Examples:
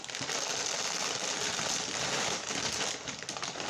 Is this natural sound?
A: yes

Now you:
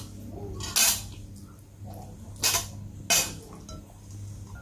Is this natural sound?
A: yes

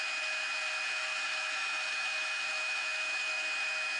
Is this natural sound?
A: no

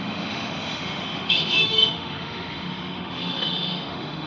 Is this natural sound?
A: no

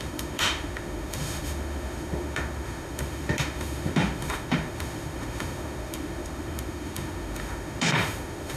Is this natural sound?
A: no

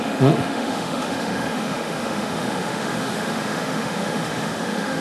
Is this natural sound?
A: no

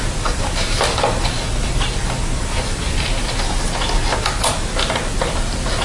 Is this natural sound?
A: yes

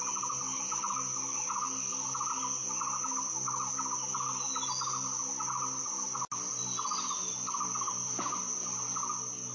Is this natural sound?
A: yes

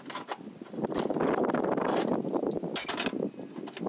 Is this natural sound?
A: yes